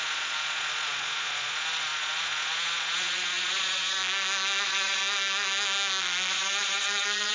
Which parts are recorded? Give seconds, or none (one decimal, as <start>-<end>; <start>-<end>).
4.0-4.6; 5.0-6.3